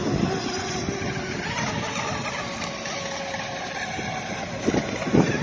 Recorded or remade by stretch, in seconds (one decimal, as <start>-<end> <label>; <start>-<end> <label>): 0.0-5.4 recorded